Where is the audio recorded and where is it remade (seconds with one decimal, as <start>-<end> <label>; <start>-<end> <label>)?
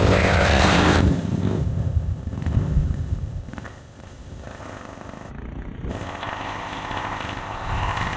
0.0-5.3 remade; 5.3-5.9 recorded; 5.9-8.2 remade